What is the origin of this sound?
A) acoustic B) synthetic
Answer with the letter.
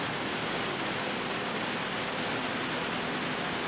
A